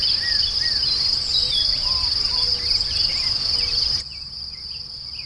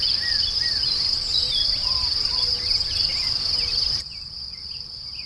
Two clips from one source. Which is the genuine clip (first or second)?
first